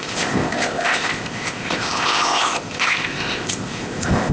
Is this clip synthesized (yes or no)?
yes